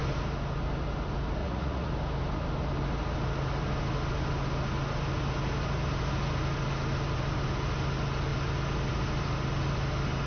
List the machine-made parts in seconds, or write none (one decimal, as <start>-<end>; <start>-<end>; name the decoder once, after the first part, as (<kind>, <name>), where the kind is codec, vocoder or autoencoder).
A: 1.4-1.9 (vocoder, Vocos)